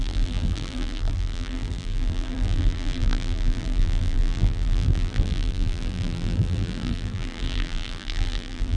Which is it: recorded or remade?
remade